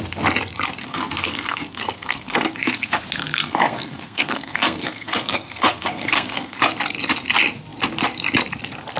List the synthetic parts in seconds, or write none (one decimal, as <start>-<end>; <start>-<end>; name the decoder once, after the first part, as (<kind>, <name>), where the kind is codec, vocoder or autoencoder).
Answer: 0.8-3.0 (codec, SNAC); 3.4-6.6